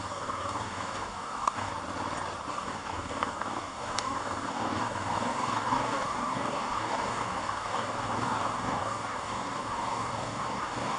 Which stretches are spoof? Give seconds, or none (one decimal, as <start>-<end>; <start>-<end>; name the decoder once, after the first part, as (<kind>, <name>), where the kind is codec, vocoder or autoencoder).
0.0-1.7 (codec, DAC); 2.5-11.0